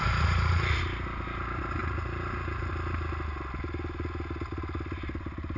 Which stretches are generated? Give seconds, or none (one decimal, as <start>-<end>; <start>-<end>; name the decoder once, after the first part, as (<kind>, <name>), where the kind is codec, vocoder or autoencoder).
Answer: 0.0-0.8 (vocoder, Vocos); 1.8-2.7